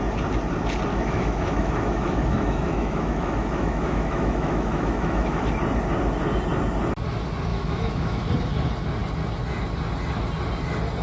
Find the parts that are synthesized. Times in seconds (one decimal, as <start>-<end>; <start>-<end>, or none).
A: 0.9-5.5; 7.5-8.3